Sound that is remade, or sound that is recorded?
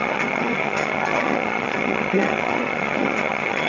remade